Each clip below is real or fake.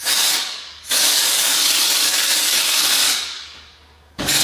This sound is fake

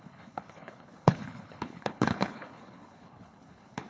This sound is fake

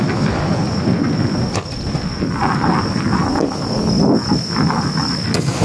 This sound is real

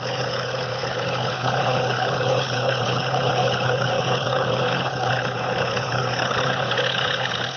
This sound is fake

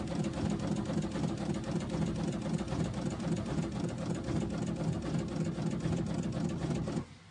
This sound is real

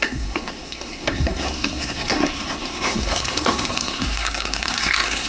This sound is fake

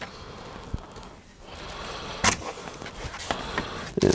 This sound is real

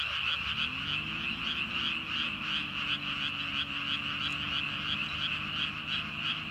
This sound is real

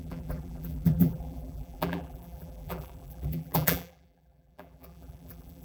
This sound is fake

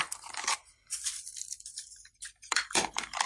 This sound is fake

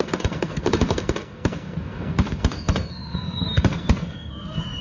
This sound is fake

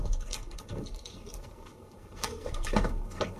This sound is fake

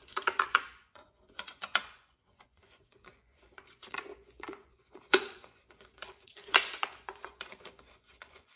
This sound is fake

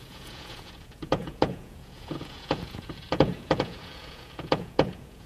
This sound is fake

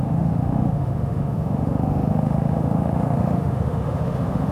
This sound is fake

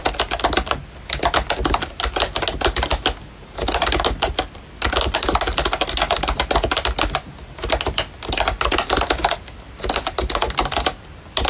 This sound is real